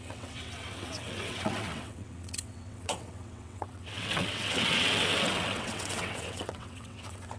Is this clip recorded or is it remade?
remade